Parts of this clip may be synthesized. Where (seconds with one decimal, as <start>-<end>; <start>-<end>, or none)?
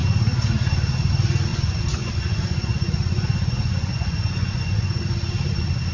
1.5-5.0